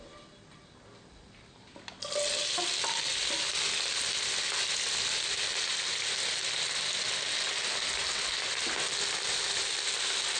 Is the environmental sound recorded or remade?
recorded